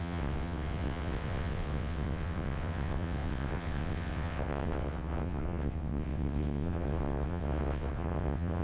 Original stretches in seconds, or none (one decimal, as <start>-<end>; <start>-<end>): none